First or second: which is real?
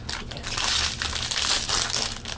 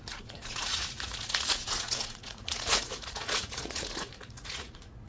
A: first